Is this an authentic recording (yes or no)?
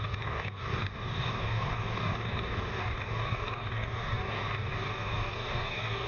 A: no